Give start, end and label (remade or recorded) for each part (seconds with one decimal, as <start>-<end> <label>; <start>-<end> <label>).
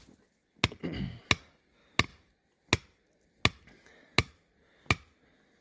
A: 0.0-5.6 recorded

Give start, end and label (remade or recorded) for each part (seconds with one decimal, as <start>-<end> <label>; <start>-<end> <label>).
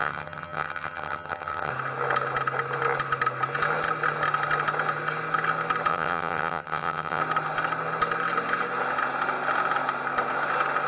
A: 0.0-1.7 remade; 1.7-5.9 recorded; 5.9-7.2 remade; 7.2-10.9 recorded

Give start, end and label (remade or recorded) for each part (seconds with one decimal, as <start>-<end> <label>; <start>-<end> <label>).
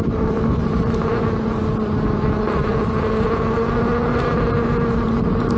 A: 0.0-5.6 recorded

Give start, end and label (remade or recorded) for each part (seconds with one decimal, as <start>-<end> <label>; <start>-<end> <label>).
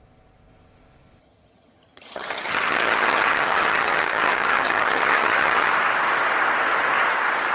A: 0.0-1.2 recorded; 1.2-5.7 remade; 5.7-7.5 recorded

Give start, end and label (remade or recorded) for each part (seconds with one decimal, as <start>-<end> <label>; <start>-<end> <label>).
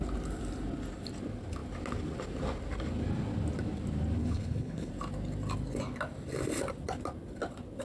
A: 0.0-4.2 recorded; 4.2-4.9 remade; 4.9-7.8 recorded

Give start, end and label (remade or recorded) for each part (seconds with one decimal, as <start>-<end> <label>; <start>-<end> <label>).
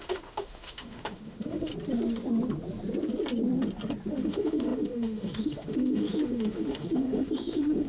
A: 0.0-1.7 remade; 1.7-4.1 recorded; 4.1-7.9 remade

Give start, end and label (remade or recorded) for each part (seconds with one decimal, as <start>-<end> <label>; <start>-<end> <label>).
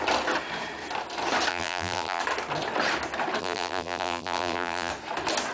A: 0.0-1.5 recorded; 1.5-2.2 remade; 2.2-3.4 recorded; 3.4-4.9 remade; 4.9-5.5 recorded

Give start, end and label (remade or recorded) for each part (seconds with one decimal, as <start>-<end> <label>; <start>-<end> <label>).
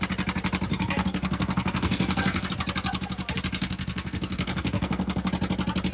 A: 0.0-0.7 recorded; 0.7-2.5 remade; 2.5-3.6 recorded; 3.6-5.3 remade; 5.3-5.9 recorded